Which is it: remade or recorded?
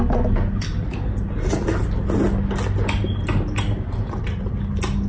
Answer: recorded